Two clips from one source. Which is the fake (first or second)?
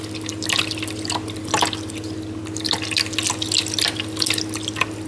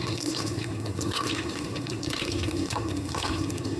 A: second